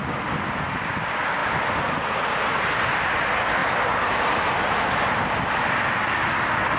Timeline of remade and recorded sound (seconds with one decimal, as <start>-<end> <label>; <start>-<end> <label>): 0.0-6.8 recorded

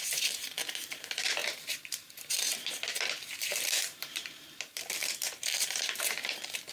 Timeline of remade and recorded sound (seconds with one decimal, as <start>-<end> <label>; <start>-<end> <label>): 0.0-6.7 remade

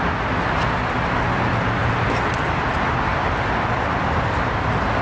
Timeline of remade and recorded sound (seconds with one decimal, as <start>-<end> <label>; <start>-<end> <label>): 0.0-1.8 recorded; 1.8-4.4 remade; 4.4-5.0 recorded

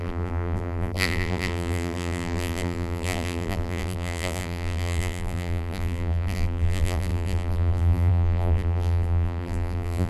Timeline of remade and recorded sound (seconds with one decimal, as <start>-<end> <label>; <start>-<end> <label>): 0.0-10.1 remade

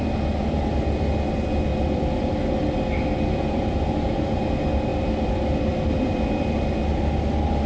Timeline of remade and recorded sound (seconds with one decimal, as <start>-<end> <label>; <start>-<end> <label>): 0.0-1.7 recorded; 1.7-2.5 remade; 2.5-4.9 recorded; 4.9-6.6 remade; 6.6-7.7 recorded

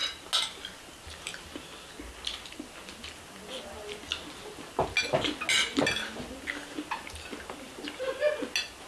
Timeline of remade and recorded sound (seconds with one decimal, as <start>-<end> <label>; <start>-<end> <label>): 0.0-8.9 recorded